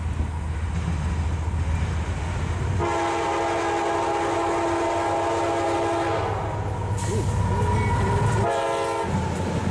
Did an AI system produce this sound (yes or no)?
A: no